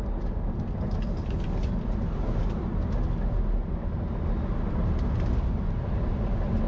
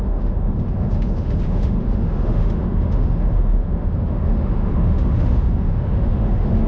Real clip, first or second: first